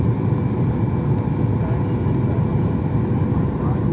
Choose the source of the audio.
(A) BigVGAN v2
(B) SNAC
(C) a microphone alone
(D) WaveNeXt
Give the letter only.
C